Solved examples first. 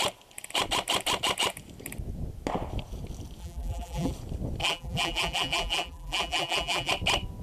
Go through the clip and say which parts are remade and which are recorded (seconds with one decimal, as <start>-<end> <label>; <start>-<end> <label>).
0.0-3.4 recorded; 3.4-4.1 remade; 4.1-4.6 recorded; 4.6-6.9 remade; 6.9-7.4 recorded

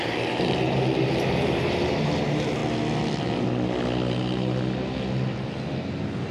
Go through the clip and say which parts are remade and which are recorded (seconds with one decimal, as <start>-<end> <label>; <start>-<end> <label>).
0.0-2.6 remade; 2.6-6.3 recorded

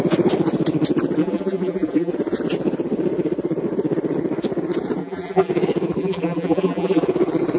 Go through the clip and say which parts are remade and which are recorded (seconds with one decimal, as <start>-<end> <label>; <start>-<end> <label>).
0.0-1.2 recorded; 1.2-2.1 remade; 2.1-5.0 recorded; 5.0-5.5 remade; 5.5-6.0 recorded; 6.0-7.0 remade; 7.0-7.6 recorded

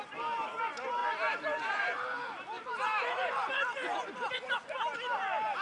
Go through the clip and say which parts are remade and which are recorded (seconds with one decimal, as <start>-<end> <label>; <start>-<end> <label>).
0.0-1.0 recorded; 1.0-4.3 remade; 4.3-5.6 recorded